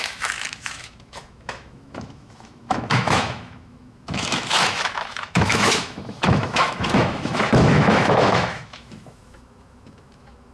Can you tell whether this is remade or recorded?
remade